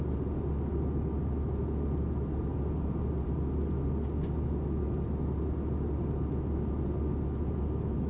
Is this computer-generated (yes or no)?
no